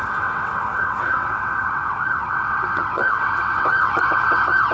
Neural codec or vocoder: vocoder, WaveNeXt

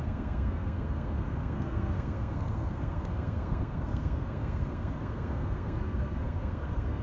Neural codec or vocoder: codec, SNAC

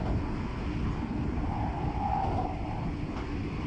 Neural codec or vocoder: none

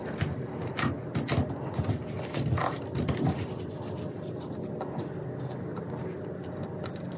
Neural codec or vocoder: none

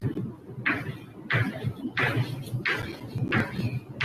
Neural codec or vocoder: none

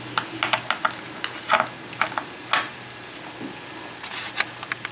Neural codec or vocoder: none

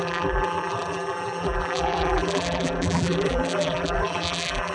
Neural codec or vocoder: vocoder, BigVGAN v2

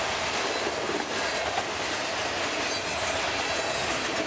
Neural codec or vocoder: none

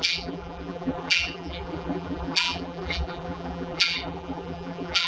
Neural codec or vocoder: vocoder, BigVGAN v2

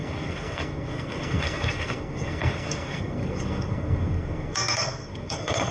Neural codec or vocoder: codec, SNAC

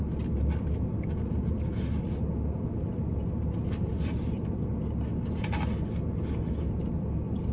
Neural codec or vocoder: none